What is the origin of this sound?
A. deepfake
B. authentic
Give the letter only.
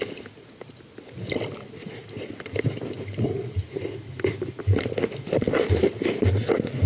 B